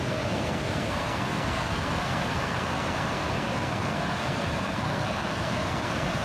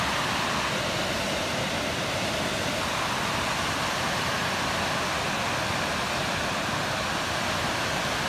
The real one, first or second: second